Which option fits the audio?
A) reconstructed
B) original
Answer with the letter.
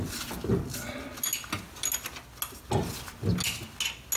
B